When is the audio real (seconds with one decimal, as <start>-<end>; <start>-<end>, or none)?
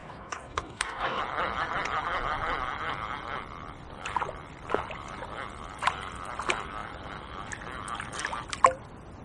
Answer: 1.2-9.2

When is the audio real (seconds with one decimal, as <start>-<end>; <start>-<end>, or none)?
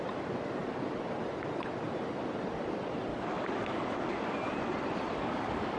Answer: 0.0-3.1; 4.5-5.1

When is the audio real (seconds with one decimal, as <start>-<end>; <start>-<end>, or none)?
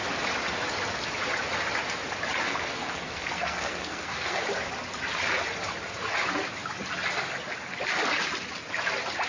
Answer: 0.0-2.5; 4.4-9.3